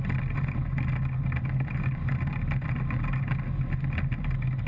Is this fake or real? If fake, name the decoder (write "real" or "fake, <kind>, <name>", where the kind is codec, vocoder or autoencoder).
real